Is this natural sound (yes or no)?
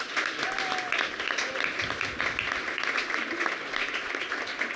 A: yes